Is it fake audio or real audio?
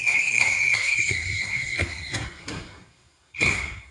fake